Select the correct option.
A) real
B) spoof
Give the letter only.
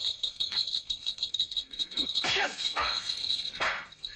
B